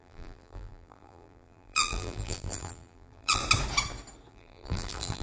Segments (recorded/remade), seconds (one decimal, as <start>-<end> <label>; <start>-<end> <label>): 0.0-3.4 remade; 3.4-4.3 recorded; 4.3-5.2 remade